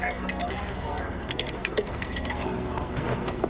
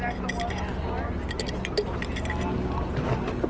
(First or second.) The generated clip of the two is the first